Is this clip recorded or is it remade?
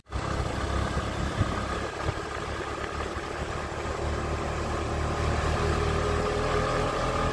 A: recorded